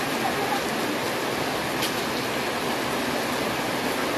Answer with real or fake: real